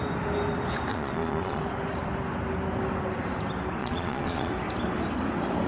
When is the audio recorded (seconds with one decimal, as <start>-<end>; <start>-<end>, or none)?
0.0-0.9; 1.6-3.8; 4.5-5.7